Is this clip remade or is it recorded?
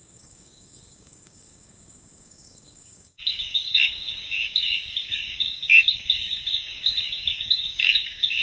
remade